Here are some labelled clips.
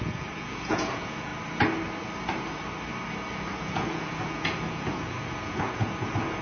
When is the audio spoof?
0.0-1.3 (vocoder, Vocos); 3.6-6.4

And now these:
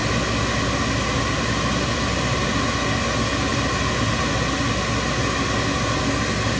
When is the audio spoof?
none

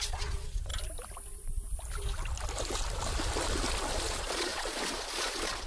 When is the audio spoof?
0.0-0.7 (vocoder, Vocos); 4.1-5.7